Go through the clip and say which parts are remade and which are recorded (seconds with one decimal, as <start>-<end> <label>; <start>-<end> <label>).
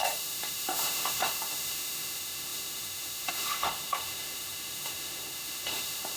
0.0-6.2 remade